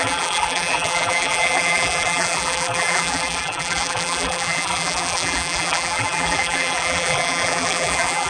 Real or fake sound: fake